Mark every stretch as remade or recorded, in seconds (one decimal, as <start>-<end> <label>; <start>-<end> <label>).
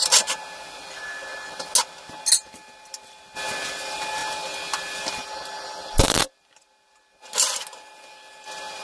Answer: 0.0-8.8 recorded